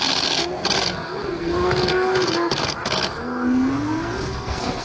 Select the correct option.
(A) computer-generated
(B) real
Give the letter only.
A